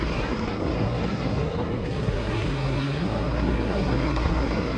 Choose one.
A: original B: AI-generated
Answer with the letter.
B